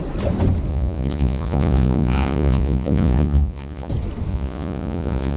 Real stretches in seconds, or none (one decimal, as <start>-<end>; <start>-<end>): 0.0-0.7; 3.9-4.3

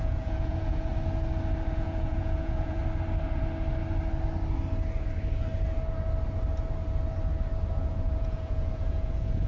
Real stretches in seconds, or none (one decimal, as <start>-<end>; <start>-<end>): 0.9-1.7; 2.8-7.8

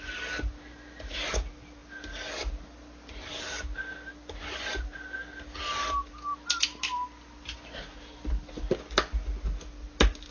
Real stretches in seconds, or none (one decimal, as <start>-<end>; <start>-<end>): 0.0-10.3

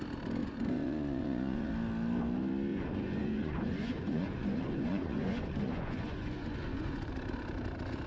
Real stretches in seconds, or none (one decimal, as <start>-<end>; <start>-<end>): 0.0-0.4; 1.7-2.7; 7.1-8.1